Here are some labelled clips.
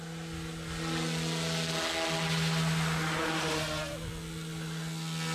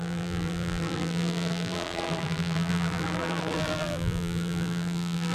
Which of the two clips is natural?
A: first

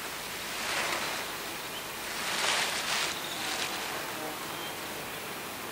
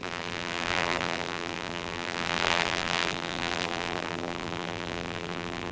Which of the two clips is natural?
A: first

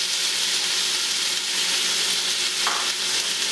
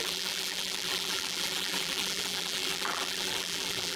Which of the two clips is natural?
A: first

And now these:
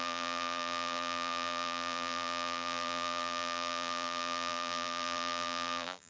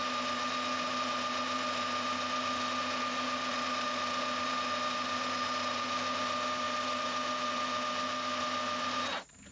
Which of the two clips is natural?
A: second